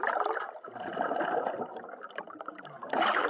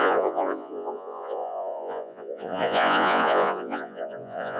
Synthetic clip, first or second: second